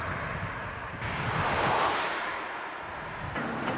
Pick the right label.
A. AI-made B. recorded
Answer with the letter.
B